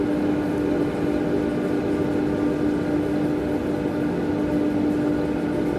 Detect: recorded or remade recorded